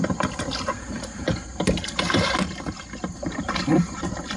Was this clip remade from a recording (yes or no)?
no